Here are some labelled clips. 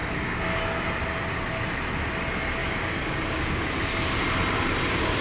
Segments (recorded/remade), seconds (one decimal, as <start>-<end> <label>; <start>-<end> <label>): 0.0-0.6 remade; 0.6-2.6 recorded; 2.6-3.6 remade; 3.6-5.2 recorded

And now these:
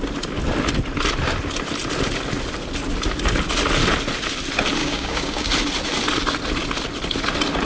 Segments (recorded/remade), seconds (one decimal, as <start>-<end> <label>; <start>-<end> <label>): 0.0-4.8 recorded; 4.8-5.5 remade; 5.5-7.7 recorded

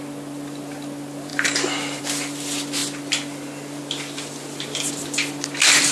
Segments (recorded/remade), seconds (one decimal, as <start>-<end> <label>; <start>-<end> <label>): 0.0-5.9 recorded

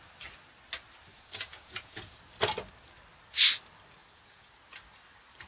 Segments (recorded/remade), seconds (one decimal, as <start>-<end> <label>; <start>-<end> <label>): 0.0-1.1 recorded; 1.1-2.2 remade; 2.2-4.0 recorded; 4.0-4.5 remade; 4.5-5.5 recorded

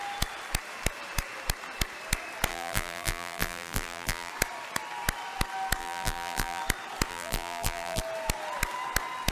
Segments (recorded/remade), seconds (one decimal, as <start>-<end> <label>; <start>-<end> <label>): 0.0-2.5 recorded; 2.5-4.3 remade; 4.3-5.8 recorded; 5.8-6.6 remade; 6.6-7.1 recorded; 7.1-8.0 remade; 8.0-9.3 recorded

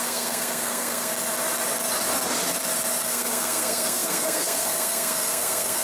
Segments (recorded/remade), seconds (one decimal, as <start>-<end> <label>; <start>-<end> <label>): 0.0-1.1 remade; 1.1-3.0 recorded; 3.0-5.8 remade